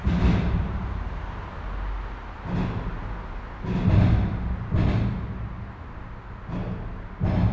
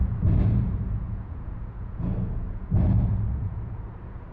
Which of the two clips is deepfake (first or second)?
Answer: second